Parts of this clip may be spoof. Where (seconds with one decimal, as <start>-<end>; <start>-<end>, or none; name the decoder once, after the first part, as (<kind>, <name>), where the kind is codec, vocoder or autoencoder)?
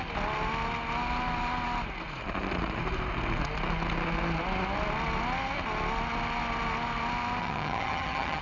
7.4-8.4 (vocoder, HiFi-GAN)